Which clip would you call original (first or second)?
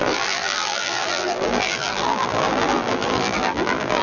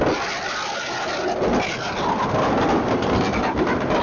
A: second